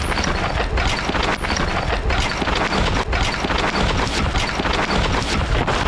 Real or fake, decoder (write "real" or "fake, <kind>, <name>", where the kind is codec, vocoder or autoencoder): real